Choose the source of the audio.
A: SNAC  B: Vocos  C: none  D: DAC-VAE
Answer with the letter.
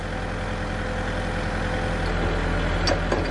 C